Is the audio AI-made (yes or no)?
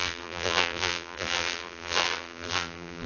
yes